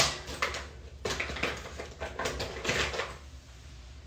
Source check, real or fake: real